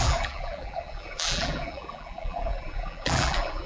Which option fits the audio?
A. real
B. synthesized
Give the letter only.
B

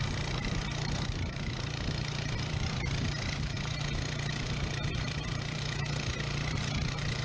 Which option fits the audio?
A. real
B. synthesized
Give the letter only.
B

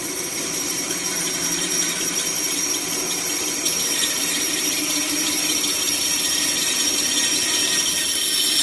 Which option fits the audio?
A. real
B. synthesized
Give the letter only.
B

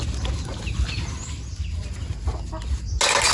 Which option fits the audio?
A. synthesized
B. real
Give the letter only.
B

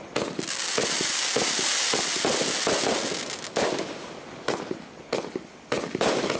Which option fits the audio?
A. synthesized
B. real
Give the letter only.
B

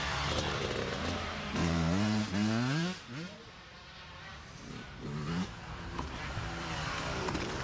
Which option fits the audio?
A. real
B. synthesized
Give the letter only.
B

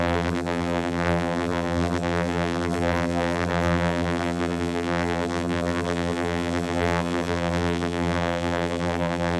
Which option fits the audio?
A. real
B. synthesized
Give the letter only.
B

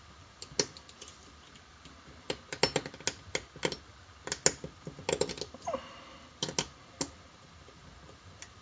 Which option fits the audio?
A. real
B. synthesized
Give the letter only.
A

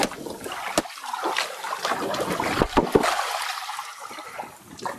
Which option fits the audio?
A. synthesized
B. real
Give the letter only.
A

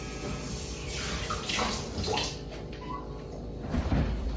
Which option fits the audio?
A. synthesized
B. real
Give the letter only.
A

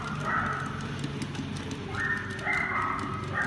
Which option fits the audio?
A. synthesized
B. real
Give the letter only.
B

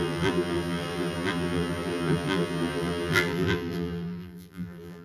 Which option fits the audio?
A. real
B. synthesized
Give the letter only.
B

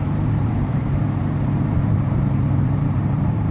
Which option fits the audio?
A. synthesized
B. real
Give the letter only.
A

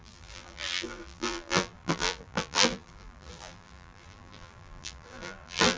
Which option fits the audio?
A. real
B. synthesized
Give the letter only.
B